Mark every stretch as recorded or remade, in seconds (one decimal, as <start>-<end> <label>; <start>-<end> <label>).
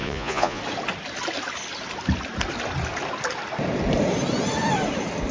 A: 0.0-0.6 remade; 0.6-5.3 recorded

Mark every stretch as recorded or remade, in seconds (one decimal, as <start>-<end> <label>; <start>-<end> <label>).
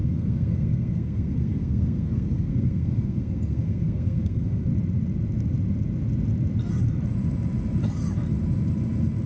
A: 0.0-4.7 remade; 4.7-9.3 recorded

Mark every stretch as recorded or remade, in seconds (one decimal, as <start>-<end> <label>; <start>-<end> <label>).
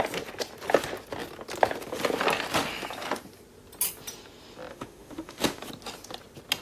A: 0.0-4.7 recorded; 4.7-5.6 remade; 5.6-6.6 recorded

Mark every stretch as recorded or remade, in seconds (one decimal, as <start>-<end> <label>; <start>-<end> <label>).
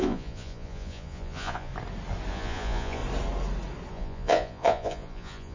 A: 0.0-1.7 remade; 1.7-2.3 recorded; 2.3-3.0 remade; 3.0-3.9 recorded; 3.9-5.5 remade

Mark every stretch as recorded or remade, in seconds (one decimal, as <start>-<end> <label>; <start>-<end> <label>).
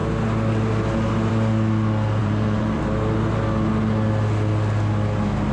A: 0.0-2.2 recorded; 2.2-2.8 remade; 2.8-5.5 recorded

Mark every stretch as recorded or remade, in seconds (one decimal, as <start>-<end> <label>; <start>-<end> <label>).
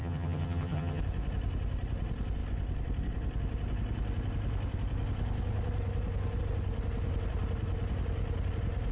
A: 0.0-1.0 remade; 1.0-8.9 recorded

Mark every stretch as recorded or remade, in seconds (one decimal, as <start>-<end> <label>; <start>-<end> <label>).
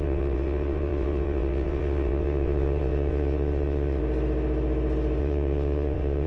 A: 0.0-4.0 remade; 4.0-5.2 recorded; 5.2-6.3 remade